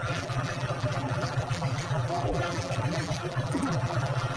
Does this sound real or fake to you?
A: fake